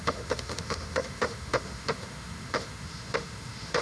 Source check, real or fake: fake